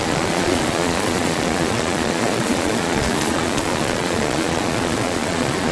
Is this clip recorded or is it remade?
remade